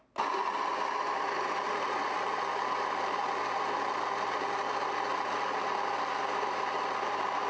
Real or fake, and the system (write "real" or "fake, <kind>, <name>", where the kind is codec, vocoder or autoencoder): real